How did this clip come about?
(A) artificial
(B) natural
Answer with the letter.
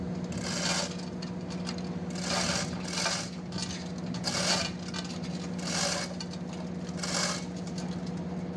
B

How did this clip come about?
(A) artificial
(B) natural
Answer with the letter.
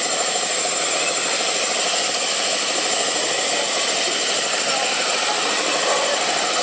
B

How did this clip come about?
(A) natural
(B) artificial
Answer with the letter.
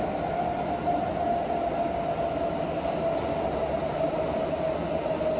A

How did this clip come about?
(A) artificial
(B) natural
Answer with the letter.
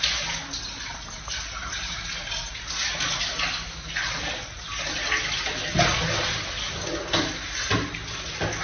B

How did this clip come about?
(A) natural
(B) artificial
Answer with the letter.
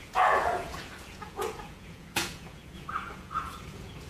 B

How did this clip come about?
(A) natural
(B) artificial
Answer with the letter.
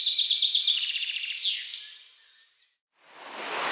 A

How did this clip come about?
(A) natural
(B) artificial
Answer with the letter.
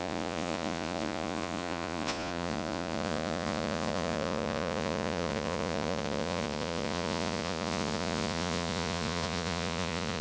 B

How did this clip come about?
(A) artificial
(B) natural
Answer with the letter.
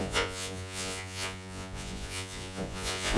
A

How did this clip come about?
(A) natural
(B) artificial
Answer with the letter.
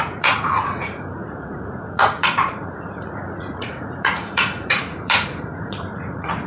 B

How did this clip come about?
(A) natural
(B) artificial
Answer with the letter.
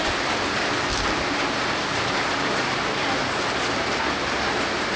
A